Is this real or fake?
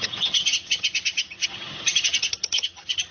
fake